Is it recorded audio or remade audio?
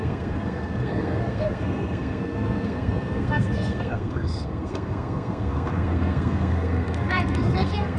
remade